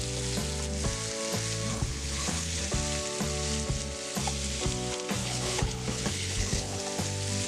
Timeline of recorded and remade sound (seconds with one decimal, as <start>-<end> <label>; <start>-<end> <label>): 0.0-1.7 recorded; 1.7-2.6 remade; 2.6-5.2 recorded; 5.2-6.8 remade; 6.8-7.5 recorded

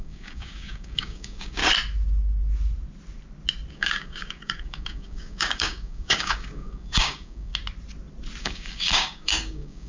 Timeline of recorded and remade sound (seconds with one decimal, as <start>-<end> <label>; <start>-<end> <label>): 0.0-1.6 remade; 1.6-3.7 recorded; 3.7-7.5 remade; 7.5-8.4 recorded; 8.4-9.9 remade

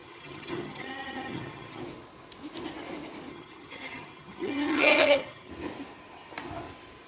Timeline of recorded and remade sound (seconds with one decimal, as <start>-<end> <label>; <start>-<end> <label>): 0.0-1.8 remade; 1.8-3.3 recorded; 3.3-5.5 remade; 5.5-7.1 recorded

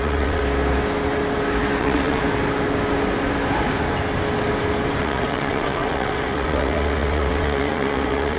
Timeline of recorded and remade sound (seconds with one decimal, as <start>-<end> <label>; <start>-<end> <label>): 0.0-0.4 remade; 0.4-1.8 recorded; 1.8-2.2 remade; 2.2-5.0 recorded; 5.0-8.4 remade

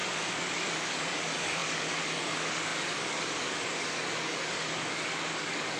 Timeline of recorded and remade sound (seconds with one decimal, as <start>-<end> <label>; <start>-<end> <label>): 0.0-5.8 remade

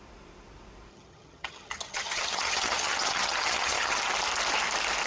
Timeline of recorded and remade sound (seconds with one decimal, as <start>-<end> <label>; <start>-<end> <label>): 0.0-0.9 recorded; 0.9-4.0 remade; 4.0-5.1 recorded

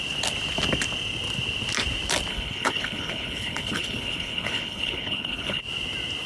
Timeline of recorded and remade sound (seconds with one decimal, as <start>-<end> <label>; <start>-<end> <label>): 0.0-2.3 recorded; 2.3-5.6 remade; 5.6-6.3 recorded